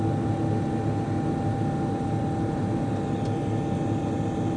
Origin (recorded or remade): recorded